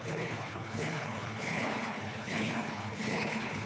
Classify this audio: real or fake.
fake